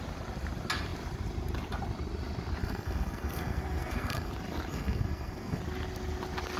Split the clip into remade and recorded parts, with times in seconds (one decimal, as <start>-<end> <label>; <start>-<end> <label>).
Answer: 0.0-2.6 recorded; 2.6-4.3 remade; 4.3-4.7 recorded; 4.7-5.6 remade; 5.6-6.6 recorded